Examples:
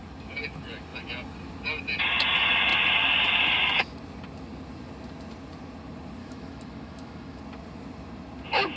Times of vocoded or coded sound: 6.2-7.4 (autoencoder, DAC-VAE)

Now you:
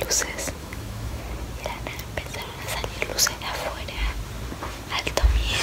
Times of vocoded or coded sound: 0.6-1.2 (autoencoder, DAC-VAE)

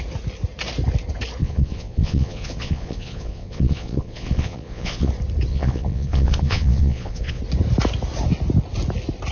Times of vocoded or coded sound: 1.4-5.1 (vocoder, Vocos); 5.5-7.4

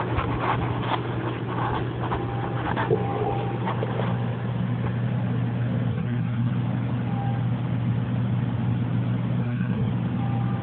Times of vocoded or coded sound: 5.9-6.5 (codec, SNAC); 9.4-9.9

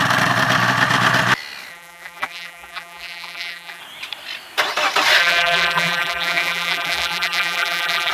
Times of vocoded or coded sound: 1.7-3.8 (vocoder, BigVGAN v2); 5.2-8.1

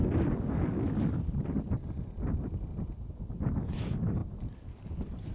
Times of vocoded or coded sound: none

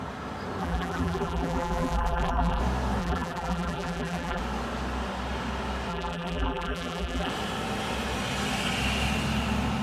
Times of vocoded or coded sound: 0.6-2.6 (vocoder, BigVGAN v2); 3.0-4.4; 5.9-7.3

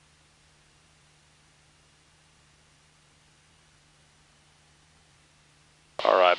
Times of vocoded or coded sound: none